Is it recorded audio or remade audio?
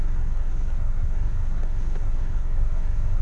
remade